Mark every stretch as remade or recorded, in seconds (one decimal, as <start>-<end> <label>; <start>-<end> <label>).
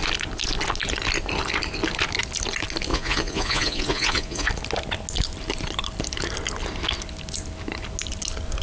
0.0-2.9 recorded; 2.9-4.5 remade; 4.5-8.6 recorded